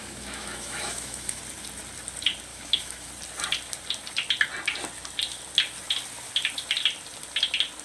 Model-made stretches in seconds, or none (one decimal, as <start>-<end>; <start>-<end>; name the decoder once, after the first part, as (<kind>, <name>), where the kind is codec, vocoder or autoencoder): 0.0-1.4 (autoencoder, DAC-VAE); 2.5-3.1